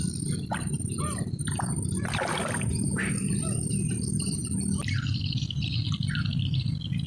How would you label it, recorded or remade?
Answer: recorded